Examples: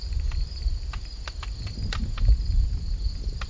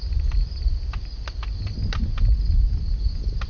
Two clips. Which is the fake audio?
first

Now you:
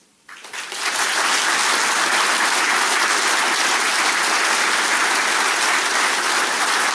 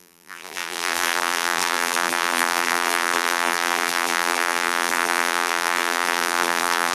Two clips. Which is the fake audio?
second